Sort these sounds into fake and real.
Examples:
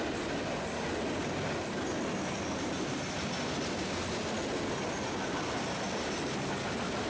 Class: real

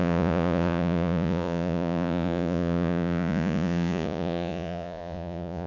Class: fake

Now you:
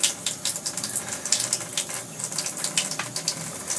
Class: real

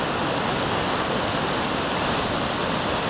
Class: real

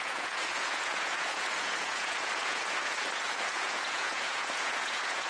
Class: fake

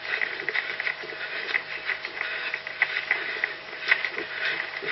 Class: real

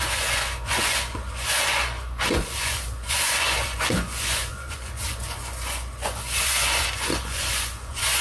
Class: fake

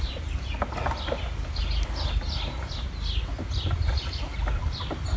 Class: real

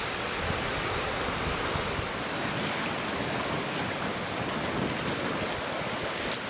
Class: real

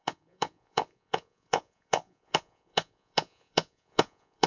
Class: fake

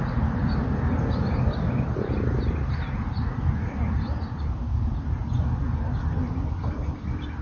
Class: real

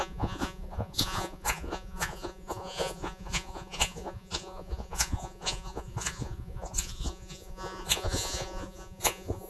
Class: fake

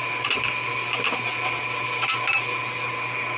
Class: real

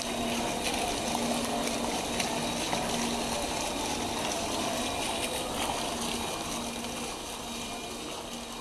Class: real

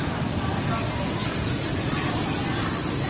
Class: real